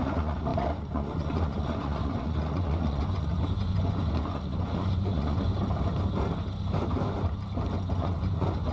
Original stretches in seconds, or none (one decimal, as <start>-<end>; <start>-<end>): 5.5-8.0